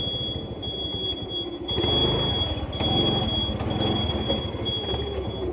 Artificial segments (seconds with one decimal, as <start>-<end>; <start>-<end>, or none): none